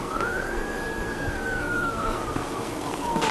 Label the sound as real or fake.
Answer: fake